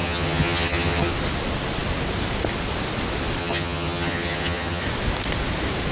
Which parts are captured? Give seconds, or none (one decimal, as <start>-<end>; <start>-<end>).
1.1-3.4; 4.8-5.9